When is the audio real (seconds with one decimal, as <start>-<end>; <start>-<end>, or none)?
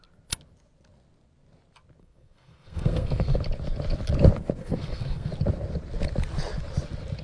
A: 0.0-2.0; 3.4-4.6; 5.3-7.2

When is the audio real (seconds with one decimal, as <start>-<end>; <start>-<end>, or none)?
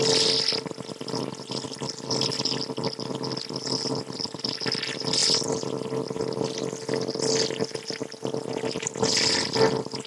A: 0.0-10.1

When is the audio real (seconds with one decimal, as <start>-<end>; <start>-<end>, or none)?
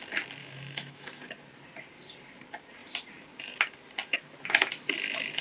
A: 0.0-0.4; 1.2-5.4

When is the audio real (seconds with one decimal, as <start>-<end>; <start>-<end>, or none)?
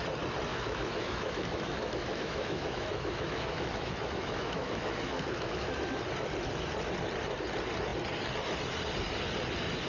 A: 0.0-0.5; 5.7-9.9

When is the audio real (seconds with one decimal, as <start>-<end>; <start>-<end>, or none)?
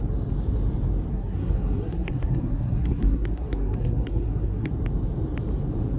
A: 0.0-1.1; 4.7-6.0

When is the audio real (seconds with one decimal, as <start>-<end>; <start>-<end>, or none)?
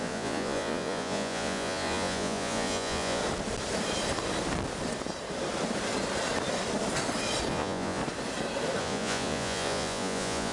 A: 3.2-7.5; 8.0-8.8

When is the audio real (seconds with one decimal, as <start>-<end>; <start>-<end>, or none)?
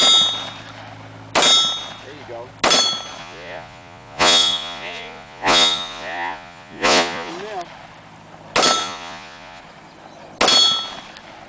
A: 0.0-3.2; 7.3-8.8; 9.6-11.5